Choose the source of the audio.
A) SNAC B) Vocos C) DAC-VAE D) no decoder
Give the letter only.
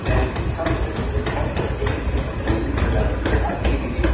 D